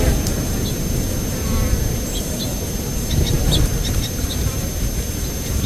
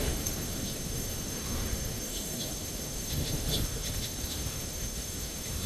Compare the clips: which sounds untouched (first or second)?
first